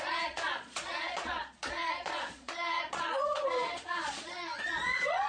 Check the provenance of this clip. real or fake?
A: fake